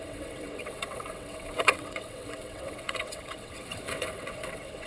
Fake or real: fake